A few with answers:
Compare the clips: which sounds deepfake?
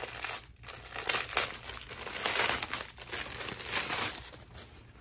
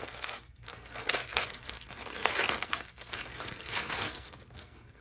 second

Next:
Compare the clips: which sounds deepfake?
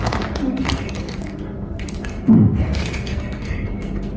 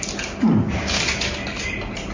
first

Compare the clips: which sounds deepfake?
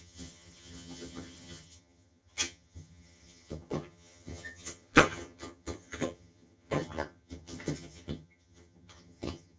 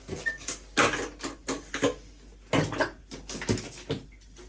first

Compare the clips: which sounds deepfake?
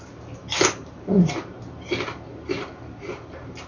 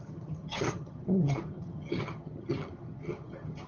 second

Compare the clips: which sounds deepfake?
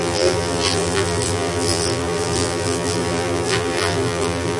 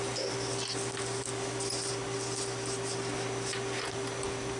first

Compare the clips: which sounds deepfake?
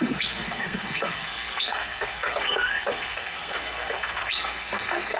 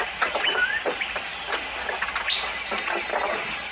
first